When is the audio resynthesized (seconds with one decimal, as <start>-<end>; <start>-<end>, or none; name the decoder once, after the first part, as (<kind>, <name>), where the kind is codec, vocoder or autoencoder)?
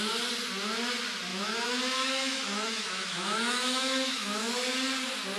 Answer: 1.3-4.5 (autoencoder, DAC-VAE)